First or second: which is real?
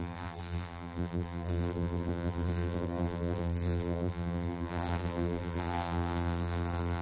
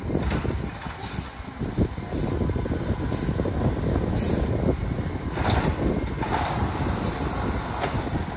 second